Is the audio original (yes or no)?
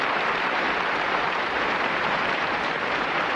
no